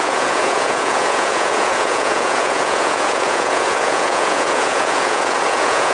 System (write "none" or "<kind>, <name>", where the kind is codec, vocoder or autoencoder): vocoder, Vocos